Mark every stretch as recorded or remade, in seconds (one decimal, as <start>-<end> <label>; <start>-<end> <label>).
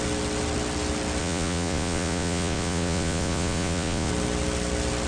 0.0-1.2 recorded; 1.2-4.1 remade; 4.1-5.1 recorded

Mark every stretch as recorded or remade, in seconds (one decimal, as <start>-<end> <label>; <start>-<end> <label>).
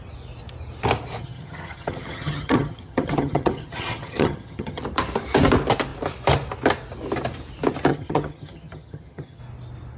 0.0-1.2 recorded; 1.2-4.8 remade; 4.8-7.9 recorded; 7.9-9.4 remade; 9.4-10.0 recorded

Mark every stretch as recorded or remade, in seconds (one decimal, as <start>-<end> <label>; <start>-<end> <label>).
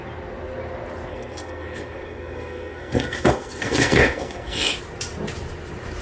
0.0-1.1 recorded; 1.1-4.7 remade; 4.7-6.0 recorded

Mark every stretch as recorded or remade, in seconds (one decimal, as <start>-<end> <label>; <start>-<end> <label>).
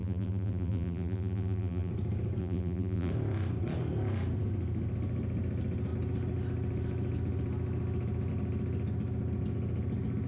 0.0-1.9 remade; 1.9-2.4 recorded; 2.4-3.1 remade; 3.1-10.3 recorded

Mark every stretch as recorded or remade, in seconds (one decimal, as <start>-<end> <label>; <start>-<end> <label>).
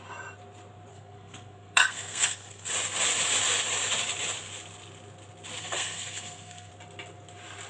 0.0-0.9 recorded; 0.9-2.7 remade; 2.7-5.6 recorded; 5.6-6.7 remade; 6.7-7.7 recorded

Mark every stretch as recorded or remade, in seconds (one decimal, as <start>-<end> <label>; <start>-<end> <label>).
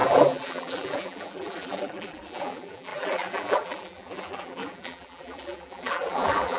0.0-6.6 remade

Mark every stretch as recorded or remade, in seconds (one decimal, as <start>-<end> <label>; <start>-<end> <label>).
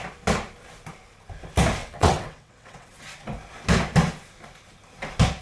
0.0-1.8 recorded; 1.8-3.0 remade; 3.0-5.4 recorded